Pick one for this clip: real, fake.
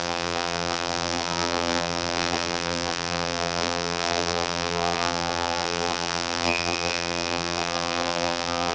fake